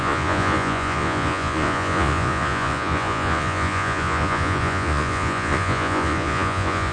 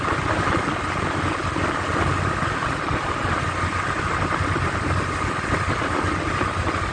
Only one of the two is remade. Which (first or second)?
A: first